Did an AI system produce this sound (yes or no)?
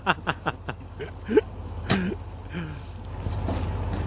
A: no